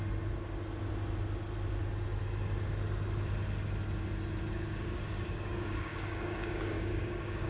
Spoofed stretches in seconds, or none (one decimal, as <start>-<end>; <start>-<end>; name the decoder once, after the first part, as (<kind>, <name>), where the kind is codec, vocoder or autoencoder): 4.5-7.5 (codec, DAC)